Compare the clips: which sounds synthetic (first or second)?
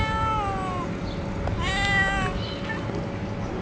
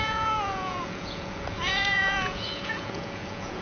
second